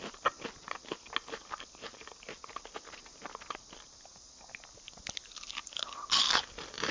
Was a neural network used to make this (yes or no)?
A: no